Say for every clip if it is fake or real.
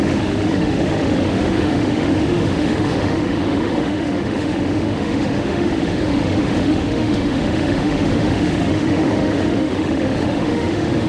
fake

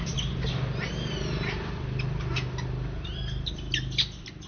real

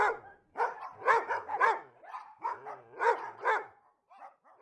real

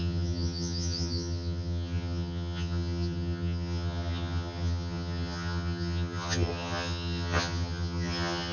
fake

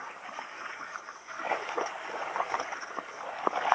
fake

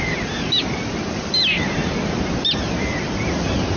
real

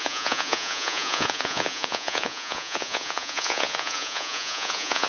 fake